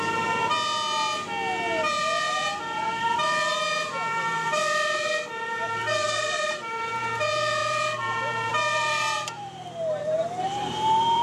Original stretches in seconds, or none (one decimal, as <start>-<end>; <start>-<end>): 0.5-2.3